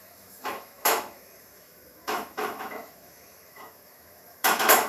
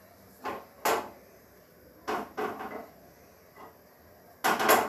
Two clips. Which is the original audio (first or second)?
second